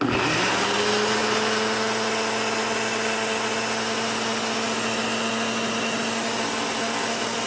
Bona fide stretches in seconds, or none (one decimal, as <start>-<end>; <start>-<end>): 0.0-7.5